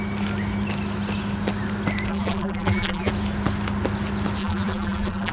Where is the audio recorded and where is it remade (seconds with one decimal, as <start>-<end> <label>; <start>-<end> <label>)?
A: 0.0-2.1 recorded; 2.1-3.1 remade; 3.1-4.4 recorded; 4.4-5.3 remade